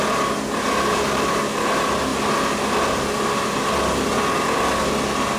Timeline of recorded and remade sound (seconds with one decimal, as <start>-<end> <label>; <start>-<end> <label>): 0.0-0.9 recorded; 0.9-1.4 remade; 1.4-5.4 recorded